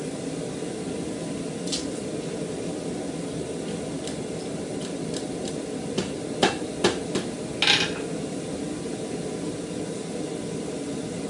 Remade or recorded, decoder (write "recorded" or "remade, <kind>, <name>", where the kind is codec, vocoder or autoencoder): recorded